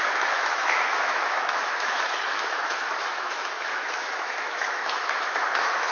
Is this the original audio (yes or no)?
no